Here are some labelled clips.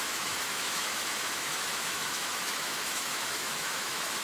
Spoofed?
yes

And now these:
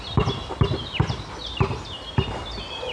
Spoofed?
no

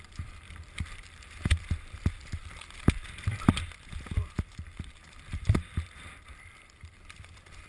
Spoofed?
yes